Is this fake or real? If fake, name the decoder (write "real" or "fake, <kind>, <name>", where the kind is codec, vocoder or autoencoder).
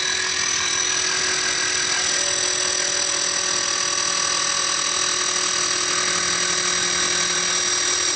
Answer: real